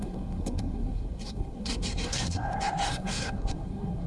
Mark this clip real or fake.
fake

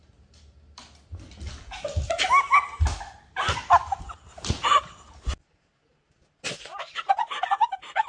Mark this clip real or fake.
real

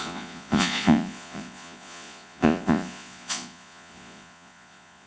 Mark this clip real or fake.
fake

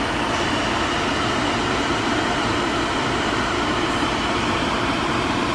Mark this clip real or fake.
fake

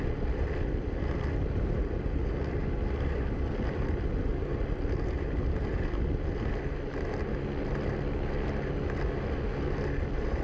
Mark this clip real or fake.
real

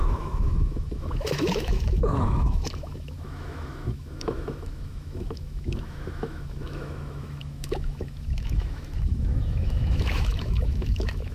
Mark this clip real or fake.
fake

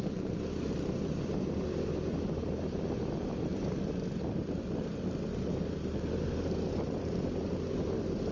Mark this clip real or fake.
fake